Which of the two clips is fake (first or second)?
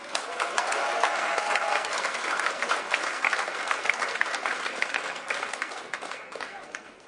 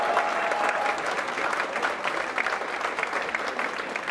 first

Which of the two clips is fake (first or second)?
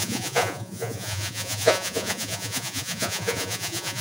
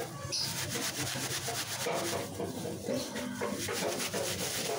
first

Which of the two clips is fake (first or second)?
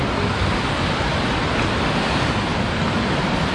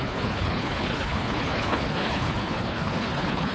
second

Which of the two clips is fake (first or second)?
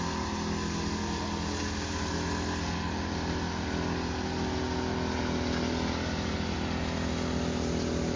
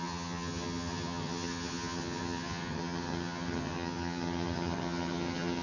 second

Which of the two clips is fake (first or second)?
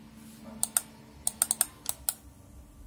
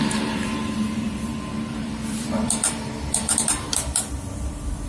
second